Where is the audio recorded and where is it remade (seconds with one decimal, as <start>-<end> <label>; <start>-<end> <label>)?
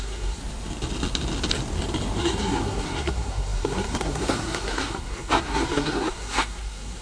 0.0-0.4 remade; 0.4-2.2 recorded; 2.2-7.0 remade